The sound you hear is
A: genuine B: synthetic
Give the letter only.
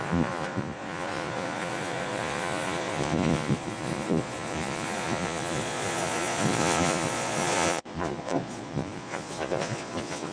B